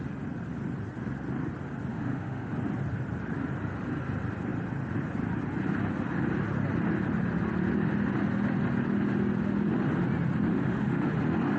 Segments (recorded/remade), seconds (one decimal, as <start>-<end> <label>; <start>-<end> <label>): 0.0-1.9 recorded; 1.9-2.5 remade; 2.5-10.5 recorded; 10.5-11.1 remade; 11.1-11.6 recorded